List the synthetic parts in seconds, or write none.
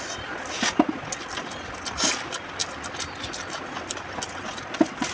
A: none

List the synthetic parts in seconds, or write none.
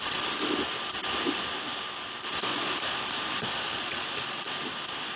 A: 2.5-3.0 (vocoder, Vocos); 3.5-4.5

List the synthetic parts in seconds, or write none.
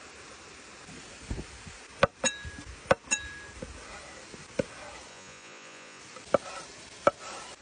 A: 5.1-6.0 (vocoder, Vocos)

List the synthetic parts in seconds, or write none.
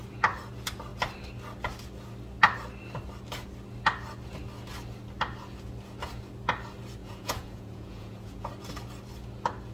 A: 7.0-8.5 (vocoder, Vocos)